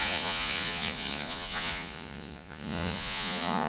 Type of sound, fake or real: fake